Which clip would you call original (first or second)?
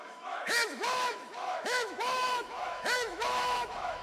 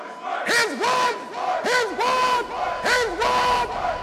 second